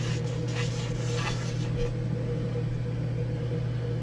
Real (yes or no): yes